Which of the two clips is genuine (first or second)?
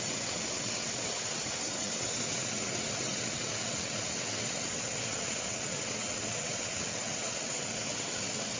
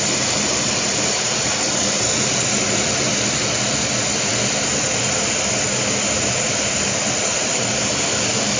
second